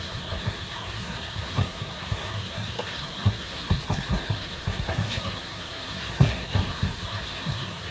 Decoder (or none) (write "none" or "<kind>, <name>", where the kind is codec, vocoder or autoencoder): codec, SNAC